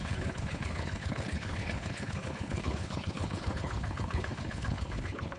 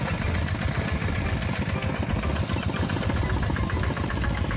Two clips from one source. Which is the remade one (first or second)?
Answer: first